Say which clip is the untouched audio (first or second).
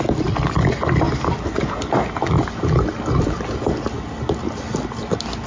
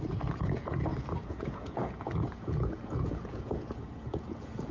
first